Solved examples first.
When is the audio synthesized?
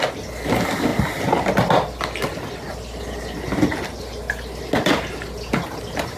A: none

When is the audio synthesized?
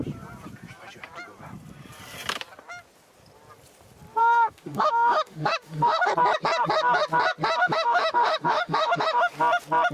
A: 4.2-6.1 (autoencoder, DAC-VAE); 7.6-9.3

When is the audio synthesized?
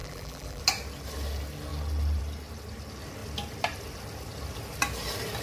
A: 0.0-0.6 (vocoder, BigVGAN v2)